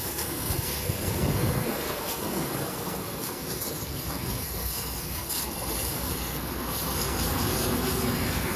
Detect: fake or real fake